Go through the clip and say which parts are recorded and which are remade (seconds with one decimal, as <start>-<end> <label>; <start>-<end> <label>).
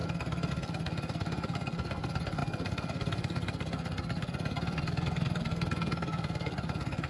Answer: 0.0-7.1 remade